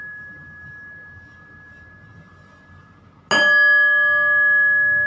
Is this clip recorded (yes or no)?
yes